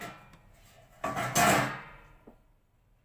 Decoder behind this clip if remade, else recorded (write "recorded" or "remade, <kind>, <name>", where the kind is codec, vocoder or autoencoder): recorded